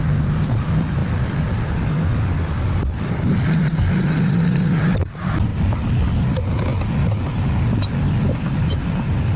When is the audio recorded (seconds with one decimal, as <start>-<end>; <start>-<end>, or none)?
0.0-9.4